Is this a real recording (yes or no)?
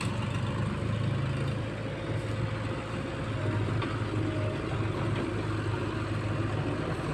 yes